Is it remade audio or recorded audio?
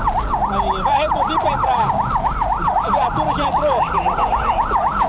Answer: recorded